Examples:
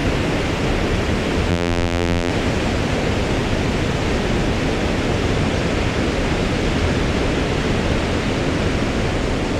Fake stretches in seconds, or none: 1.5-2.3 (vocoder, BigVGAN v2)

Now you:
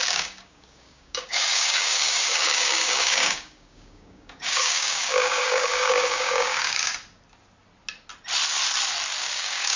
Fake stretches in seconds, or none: 0.0-6.9 (codec, DAC); 9.2-9.8

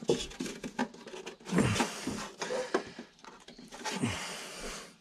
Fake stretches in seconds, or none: none

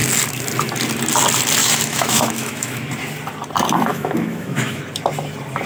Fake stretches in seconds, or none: 1.6-2.9 (autoencoder, DAC-VAE); 3.9-4.8

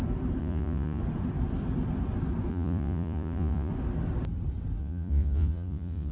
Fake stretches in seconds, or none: 0.4-1.0 (vocoder, Vocos); 2.5-3.7; 4.8-6.1

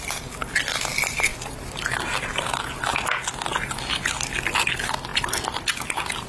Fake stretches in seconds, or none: none